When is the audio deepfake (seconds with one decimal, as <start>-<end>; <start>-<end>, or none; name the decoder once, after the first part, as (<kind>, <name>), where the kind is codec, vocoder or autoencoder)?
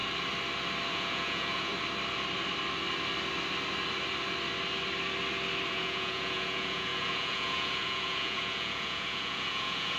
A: 0.9-1.7 (vocoder, Vocos); 5.7-10.0